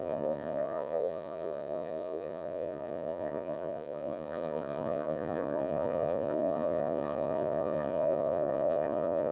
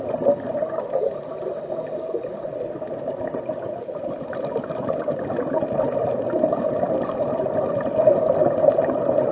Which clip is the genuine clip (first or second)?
second